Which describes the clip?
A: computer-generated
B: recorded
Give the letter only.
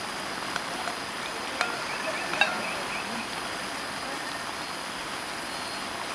B